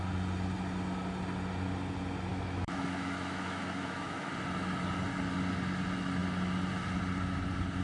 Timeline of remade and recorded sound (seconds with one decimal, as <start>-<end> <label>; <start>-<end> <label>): 0.0-2.3 recorded; 2.3-4.3 remade; 4.3-7.8 recorded